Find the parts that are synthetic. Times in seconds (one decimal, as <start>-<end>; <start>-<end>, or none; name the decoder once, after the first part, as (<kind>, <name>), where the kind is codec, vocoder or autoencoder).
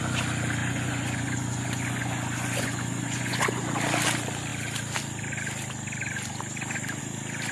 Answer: 0.6-3.7 (vocoder, Vocos)